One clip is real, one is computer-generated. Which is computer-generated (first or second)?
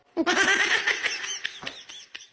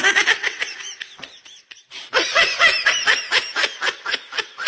second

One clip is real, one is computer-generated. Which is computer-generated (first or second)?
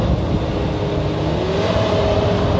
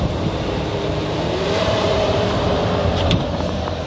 second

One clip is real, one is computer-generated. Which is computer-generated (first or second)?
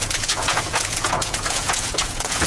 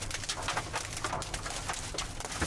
first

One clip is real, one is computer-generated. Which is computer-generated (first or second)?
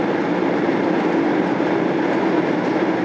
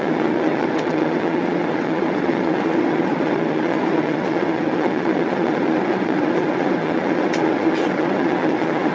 second